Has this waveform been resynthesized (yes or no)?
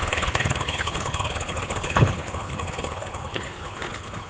yes